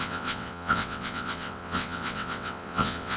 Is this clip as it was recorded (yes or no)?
no